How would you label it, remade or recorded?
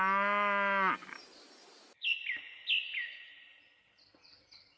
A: recorded